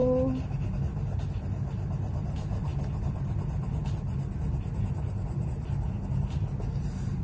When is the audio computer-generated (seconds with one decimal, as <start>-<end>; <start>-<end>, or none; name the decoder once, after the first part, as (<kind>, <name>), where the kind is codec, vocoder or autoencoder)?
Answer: none